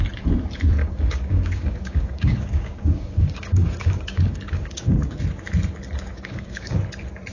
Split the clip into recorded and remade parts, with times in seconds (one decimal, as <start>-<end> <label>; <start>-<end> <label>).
0.0-0.8 recorded; 0.8-5.2 remade; 5.2-6.1 recorded; 6.1-6.8 remade; 6.8-7.3 recorded

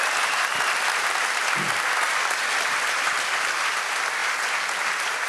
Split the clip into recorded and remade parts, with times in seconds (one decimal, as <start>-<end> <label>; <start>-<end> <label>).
0.0-5.3 recorded

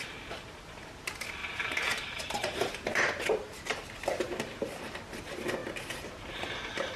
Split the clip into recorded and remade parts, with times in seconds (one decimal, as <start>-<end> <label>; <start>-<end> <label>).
0.0-1.4 recorded; 1.4-5.0 remade; 5.0-7.0 recorded

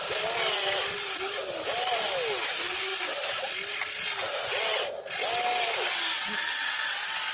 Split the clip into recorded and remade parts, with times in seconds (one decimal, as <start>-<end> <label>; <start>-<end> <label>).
0.0-7.3 recorded

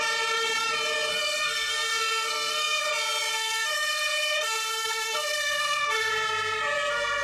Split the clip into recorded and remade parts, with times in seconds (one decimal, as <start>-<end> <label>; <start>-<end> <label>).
0.0-1.1 recorded; 1.1-2.9 remade; 2.9-3.3 recorded; 3.3-6.1 remade; 6.1-7.2 recorded

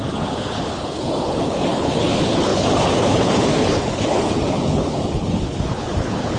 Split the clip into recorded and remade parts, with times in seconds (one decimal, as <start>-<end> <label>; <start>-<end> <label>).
0.0-6.4 remade